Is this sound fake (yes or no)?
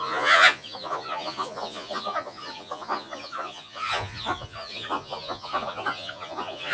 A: yes